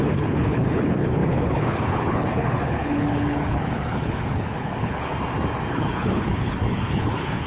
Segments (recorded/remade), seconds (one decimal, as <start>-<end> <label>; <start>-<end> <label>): 0.0-5.1 remade; 5.1-5.7 recorded; 5.7-7.5 remade